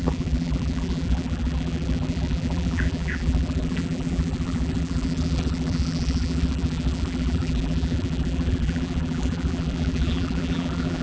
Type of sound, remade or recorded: remade